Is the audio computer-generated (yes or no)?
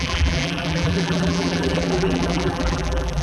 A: yes